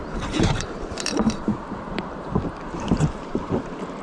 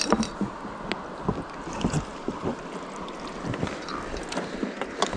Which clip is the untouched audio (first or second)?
second